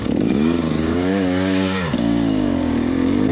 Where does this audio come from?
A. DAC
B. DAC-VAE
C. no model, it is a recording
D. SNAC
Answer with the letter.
A